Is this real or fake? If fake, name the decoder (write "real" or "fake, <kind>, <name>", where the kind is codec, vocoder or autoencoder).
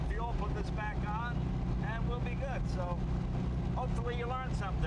real